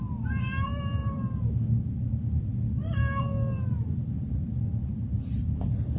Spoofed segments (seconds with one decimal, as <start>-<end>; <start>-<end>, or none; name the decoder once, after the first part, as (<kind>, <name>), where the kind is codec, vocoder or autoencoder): 1.0-1.5 (vocoder, BigVGAN v2)